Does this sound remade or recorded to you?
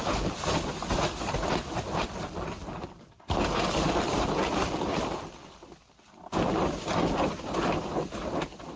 recorded